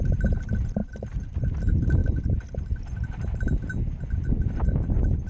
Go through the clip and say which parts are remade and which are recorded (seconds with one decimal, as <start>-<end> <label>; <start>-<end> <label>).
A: 0.0-0.8 recorded; 0.8-1.4 remade; 1.4-5.3 recorded